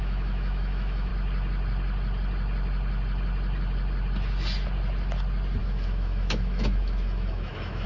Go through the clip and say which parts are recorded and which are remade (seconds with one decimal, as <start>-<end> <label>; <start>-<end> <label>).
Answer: 0.0-1.1 remade; 1.1-5.6 recorded; 5.6-7.9 remade